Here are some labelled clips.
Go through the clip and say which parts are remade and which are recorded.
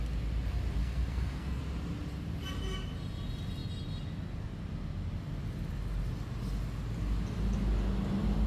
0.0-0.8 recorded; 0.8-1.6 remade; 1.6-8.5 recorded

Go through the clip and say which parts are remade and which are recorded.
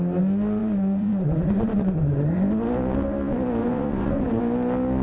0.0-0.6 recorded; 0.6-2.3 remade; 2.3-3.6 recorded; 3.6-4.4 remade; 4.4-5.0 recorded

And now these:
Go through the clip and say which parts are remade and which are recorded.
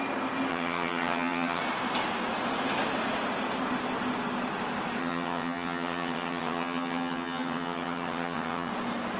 0.0-0.5 recorded; 0.5-1.6 remade; 1.6-5.0 recorded; 5.0-8.7 remade; 8.7-9.2 recorded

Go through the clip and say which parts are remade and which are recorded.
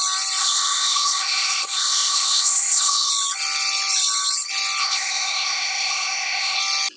0.0-0.4 recorded; 0.4-3.1 remade; 3.1-4.8 recorded; 4.8-6.6 remade; 6.6-7.0 recorded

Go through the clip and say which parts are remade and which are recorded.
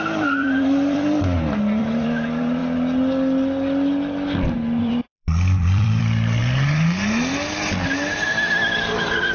0.0-2.6 remade; 2.6-4.8 recorded; 4.8-6.4 remade; 6.4-8.3 recorded; 8.3-9.3 remade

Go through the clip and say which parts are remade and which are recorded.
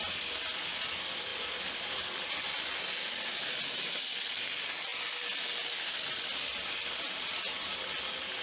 0.0-4.9 recorded; 4.9-5.9 remade; 5.9-8.4 recorded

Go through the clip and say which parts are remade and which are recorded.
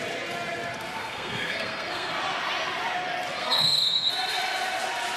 0.0-1.0 recorded; 1.0-2.1 remade; 2.1-3.4 recorded; 3.4-4.1 remade; 4.1-5.2 recorded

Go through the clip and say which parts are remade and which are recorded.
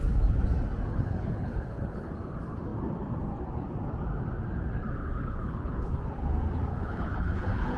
0.0-0.9 recorded; 0.9-2.1 remade; 2.1-5.0 recorded; 5.0-6.0 remade; 6.0-6.7 recorded; 6.7-7.8 remade